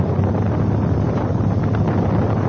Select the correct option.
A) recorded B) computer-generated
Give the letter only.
A